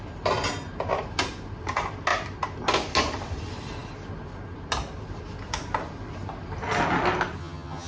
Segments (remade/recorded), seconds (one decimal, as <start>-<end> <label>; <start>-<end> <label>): 0.0-7.4 recorded; 7.4-7.9 remade